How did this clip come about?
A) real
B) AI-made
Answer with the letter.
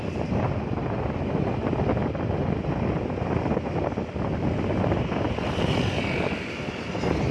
A